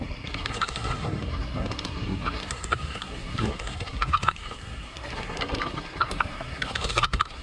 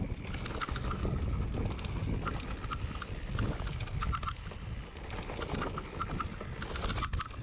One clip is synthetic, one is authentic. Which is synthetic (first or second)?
first